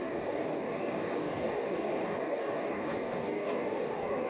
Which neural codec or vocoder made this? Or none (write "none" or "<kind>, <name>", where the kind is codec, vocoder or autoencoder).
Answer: codec, DAC